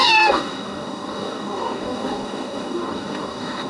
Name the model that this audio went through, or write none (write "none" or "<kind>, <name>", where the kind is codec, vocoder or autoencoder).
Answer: codec, DAC